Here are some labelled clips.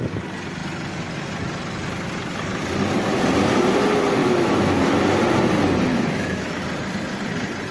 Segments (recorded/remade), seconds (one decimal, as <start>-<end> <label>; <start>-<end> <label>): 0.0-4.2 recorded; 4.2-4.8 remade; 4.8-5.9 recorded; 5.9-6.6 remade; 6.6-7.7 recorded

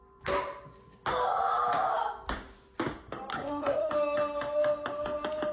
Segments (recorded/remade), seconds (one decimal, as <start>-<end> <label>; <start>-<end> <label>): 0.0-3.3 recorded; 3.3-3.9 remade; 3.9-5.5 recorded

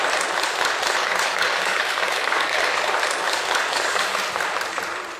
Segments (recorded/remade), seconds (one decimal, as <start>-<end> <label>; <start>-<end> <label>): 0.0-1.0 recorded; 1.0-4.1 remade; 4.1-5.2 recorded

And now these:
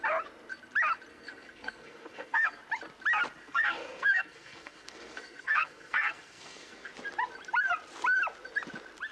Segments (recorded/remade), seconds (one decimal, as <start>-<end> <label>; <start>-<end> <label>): 0.0-1.1 recorded; 1.1-2.6 remade; 2.6-3.4 recorded; 3.4-6.9 remade; 6.9-9.1 recorded

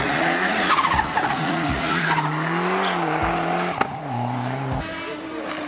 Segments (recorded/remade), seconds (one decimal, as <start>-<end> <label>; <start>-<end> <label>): 0.0-2.0 remade; 2.0-5.7 recorded

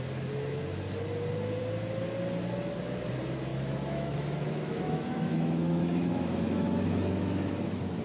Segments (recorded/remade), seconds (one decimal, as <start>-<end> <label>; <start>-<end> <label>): 0.0-3.5 recorded; 3.5-8.0 remade

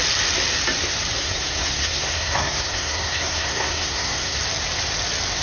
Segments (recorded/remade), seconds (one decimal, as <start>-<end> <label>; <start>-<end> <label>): 0.0-1.2 recorded; 1.2-4.4 remade; 4.4-5.4 recorded

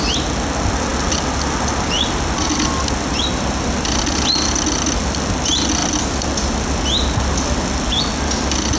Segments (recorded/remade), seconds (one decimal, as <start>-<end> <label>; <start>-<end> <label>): 0.0-8.8 recorded